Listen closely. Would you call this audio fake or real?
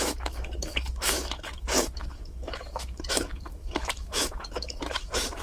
fake